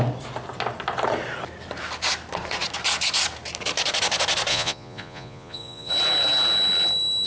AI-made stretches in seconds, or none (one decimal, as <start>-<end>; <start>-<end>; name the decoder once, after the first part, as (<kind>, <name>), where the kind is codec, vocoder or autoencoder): 4.5-5.9 (vocoder, Vocos)